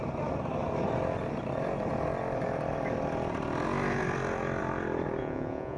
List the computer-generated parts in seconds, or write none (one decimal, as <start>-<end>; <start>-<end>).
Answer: 5.2-5.8